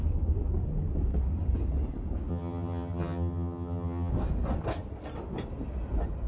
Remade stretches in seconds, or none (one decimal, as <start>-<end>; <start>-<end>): 2.3-4.1

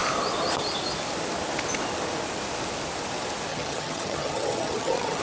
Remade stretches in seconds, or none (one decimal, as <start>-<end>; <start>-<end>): 3.5-5.2

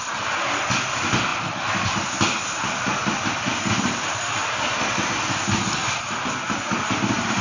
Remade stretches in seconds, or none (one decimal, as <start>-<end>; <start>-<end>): none

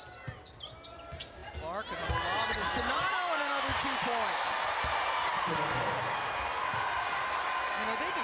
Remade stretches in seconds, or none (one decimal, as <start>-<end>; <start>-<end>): none

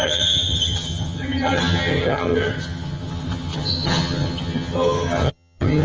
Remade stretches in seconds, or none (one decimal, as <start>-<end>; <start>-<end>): 0.0-5.8

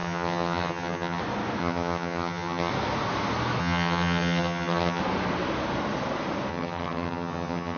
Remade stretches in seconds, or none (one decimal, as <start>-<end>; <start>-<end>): 0.0-1.2; 1.6-2.7; 3.6-5.0; 6.5-7.8

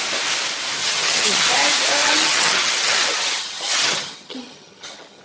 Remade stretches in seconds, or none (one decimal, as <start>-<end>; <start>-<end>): 0.8-1.5; 2.0-5.2

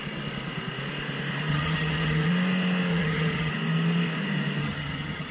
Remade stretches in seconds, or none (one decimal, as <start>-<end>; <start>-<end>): 1.5-2.3; 2.9-3.5; 4.6-5.3